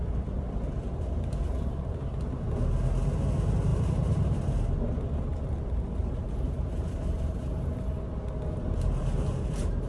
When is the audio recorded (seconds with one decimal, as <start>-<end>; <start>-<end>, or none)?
0.0-3.7; 4.4-5.3; 7.4-8.6